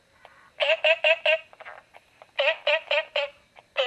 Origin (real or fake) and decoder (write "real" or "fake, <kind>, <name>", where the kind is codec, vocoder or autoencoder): real